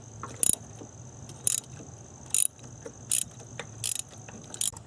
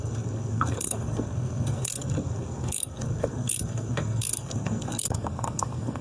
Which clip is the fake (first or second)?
second